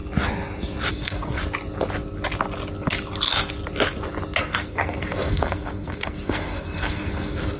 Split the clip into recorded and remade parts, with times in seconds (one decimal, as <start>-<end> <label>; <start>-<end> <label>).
0.0-0.9 recorded; 0.9-1.4 remade; 1.4-4.4 recorded; 4.4-7.6 remade